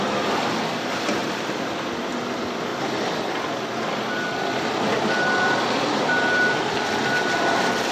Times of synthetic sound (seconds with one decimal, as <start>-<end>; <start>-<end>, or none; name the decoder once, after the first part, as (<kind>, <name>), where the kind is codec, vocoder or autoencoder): none